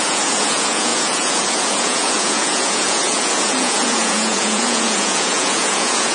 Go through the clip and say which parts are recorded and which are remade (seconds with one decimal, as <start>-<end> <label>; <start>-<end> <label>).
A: 0.0-6.1 remade